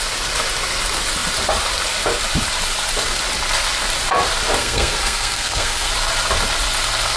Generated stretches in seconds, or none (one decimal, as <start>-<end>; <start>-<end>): 4.6-5.9